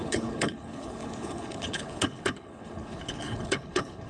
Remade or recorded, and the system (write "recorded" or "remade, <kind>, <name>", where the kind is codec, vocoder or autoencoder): remade, codec, HILCodec